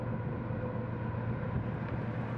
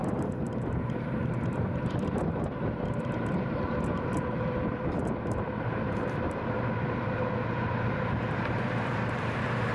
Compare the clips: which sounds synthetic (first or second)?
second